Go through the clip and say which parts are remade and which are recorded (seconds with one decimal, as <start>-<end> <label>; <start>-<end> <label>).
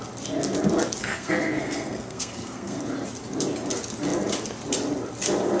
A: 0.0-1.0 recorded; 1.0-2.8 remade; 2.8-5.6 recorded